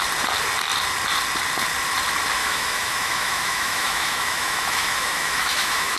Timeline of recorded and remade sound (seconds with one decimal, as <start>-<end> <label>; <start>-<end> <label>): 0.0-2.4 recorded; 2.4-6.0 remade